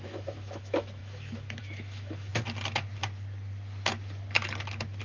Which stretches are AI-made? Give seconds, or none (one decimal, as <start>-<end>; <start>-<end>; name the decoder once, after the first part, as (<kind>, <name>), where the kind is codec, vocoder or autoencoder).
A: 0.0-2.3 (autoencoder, DAC-VAE)